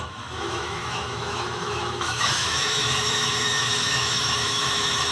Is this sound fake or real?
fake